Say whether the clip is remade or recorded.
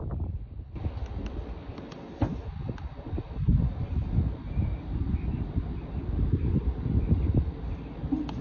recorded